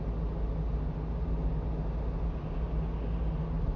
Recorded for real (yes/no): yes